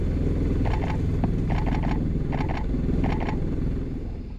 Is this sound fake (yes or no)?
no